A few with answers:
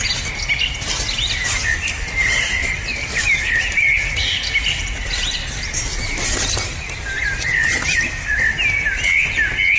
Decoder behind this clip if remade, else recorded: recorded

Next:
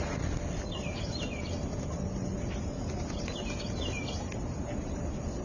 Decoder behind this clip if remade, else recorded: recorded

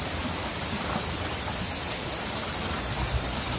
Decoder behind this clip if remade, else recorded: remade, vocoder, BigVGAN v2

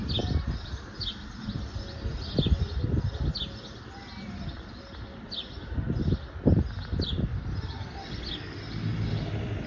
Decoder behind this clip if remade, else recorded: recorded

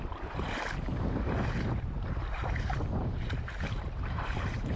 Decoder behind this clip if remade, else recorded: remade, vocoder, BigVGAN v2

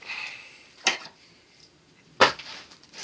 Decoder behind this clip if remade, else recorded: remade, vocoder, BigVGAN v2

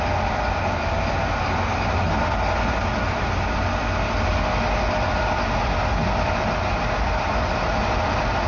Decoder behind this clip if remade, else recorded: recorded